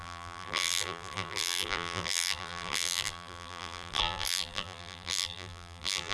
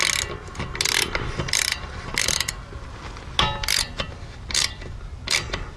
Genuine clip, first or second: second